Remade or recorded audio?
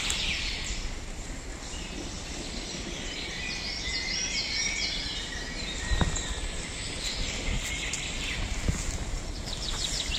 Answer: recorded